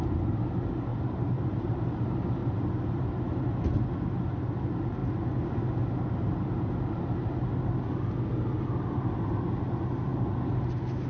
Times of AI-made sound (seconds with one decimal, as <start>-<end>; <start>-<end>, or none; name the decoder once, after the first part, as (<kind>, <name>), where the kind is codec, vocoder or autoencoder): 0.9-2.0 (vocoder, BigVGAN v2); 2.4-3.0